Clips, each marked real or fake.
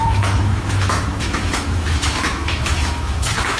fake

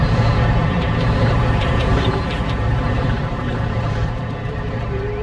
fake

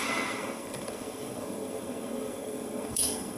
fake